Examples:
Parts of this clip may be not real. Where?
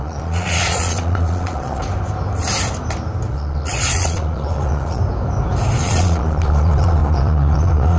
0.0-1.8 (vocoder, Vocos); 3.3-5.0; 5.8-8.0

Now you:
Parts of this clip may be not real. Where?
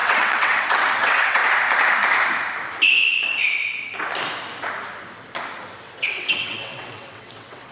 0.0-1.4 (vocoder, WaveNeXt); 5.8-7.7